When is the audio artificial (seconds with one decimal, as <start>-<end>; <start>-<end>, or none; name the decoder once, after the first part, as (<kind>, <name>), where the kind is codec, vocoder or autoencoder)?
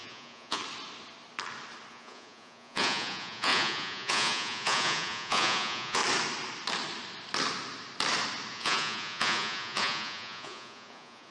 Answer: 0.0-0.6 (vocoder, Vocos); 1.9-6.0; 8.5-11.3